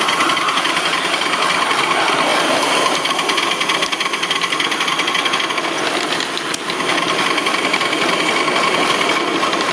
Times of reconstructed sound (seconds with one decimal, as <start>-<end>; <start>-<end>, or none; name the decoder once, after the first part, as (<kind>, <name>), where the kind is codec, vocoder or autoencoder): none